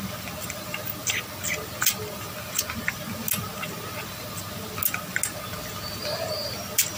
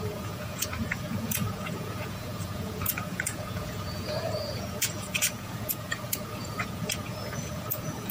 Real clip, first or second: first